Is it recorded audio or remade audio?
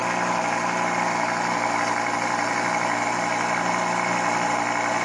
recorded